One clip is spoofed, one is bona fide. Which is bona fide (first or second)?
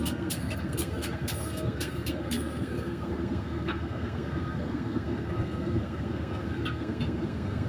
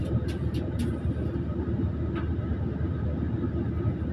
second